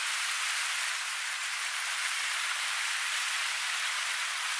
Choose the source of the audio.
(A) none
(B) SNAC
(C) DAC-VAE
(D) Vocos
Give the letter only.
A